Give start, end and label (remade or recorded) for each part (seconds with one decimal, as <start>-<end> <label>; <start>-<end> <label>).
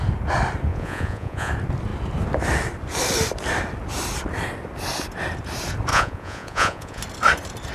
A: 0.0-0.7 recorded; 0.7-1.5 remade; 1.5-5.9 recorded; 5.9-7.0 remade; 7.0-7.7 recorded